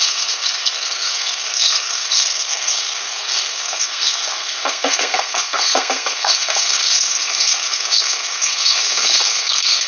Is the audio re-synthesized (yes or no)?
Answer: yes